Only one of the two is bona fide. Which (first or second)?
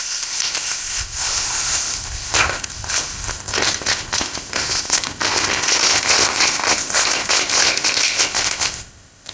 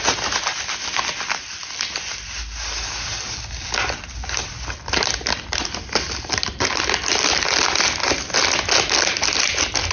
second